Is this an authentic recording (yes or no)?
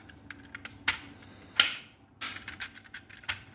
yes